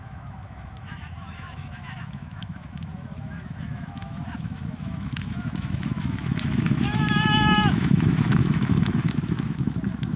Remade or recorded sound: remade